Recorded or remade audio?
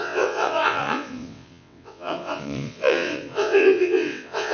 remade